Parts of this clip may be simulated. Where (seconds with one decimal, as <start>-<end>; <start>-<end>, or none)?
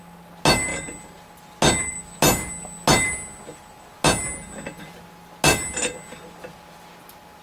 none